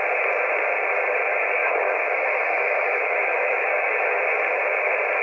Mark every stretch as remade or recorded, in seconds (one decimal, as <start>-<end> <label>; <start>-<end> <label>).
0.0-1.6 recorded; 1.6-4.4 remade; 4.4-5.2 recorded